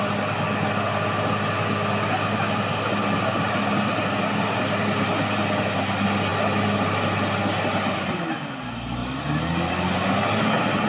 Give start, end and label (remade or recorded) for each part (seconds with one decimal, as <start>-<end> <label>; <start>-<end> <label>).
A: 0.0-10.9 recorded